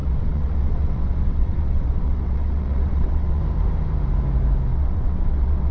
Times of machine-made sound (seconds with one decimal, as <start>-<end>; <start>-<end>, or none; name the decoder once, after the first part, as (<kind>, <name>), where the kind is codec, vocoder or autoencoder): 0.0-3.4 (vocoder, WaveNeXt); 4.7-5.7